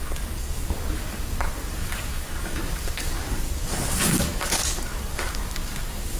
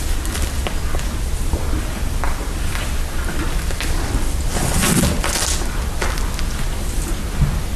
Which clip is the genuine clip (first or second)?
second